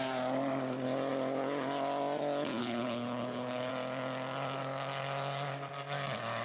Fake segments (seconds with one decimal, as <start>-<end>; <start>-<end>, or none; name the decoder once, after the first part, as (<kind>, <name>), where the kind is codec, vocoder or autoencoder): 2.6-3.7 (codec, HILCodec)